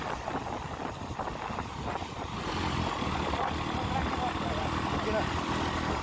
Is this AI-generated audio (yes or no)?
no